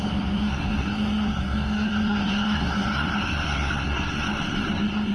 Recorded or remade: remade